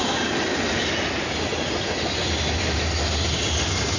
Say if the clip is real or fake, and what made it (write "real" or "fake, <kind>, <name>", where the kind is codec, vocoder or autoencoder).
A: real